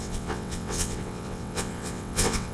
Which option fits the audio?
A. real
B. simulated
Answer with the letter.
B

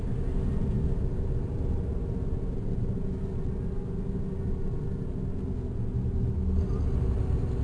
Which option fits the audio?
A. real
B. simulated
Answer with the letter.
A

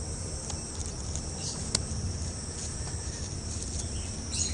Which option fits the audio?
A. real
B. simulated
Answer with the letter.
B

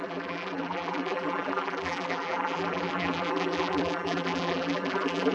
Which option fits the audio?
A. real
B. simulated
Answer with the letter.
B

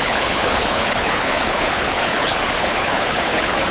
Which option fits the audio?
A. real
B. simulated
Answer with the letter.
B